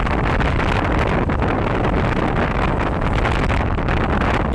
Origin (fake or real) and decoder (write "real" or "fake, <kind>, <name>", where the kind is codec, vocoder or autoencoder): real